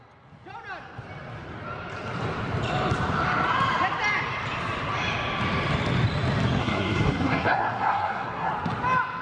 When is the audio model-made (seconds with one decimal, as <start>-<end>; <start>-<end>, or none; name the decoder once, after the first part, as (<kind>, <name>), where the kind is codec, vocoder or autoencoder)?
6.6-8.5 (codec, SNAC)